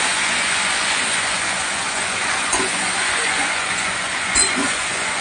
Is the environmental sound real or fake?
fake